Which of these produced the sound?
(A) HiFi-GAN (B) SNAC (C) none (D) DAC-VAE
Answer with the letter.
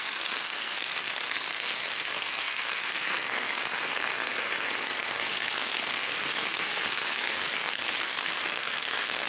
B